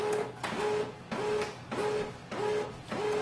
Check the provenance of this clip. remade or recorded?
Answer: recorded